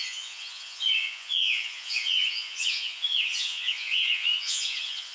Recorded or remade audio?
remade